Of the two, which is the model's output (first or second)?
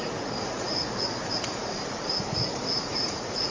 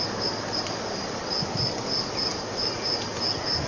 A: first